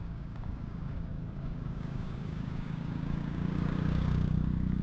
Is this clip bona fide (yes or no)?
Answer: no